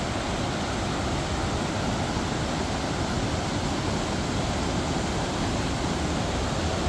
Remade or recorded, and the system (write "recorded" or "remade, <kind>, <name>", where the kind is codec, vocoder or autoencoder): recorded